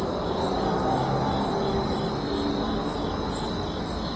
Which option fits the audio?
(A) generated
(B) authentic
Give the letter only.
B